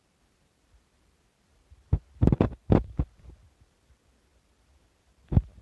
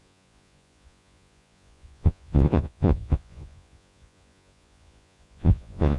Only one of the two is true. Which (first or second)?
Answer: first